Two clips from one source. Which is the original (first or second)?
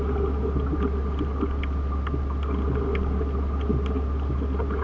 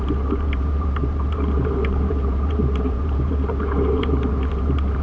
first